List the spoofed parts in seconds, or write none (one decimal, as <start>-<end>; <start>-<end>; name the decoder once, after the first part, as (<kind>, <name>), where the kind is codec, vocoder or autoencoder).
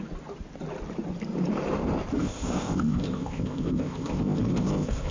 2.2-5.1 (codec, ZipCodec)